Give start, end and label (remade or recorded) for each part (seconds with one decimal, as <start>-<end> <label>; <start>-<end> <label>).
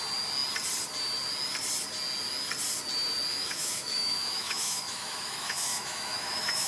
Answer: 0.0-3.3 recorded; 3.3-6.7 remade